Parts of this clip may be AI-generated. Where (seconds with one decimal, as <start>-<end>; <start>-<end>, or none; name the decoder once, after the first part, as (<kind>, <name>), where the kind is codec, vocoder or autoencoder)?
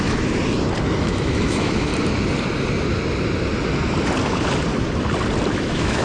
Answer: 0.0-0.4 (autoencoder, DAC-VAE); 1.0-1.9; 5.5-6.0